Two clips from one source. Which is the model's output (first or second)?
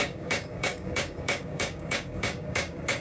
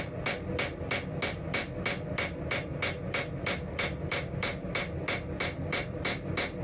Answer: first